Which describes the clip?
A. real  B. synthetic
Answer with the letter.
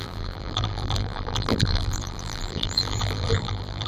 B